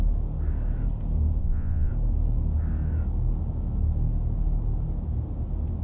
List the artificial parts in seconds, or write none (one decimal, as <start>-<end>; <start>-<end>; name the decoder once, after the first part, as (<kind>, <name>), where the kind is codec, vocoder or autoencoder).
1.4-1.9 (vocoder, Vocos)